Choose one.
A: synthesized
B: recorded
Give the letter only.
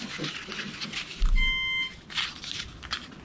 B